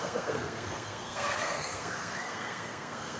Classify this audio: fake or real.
fake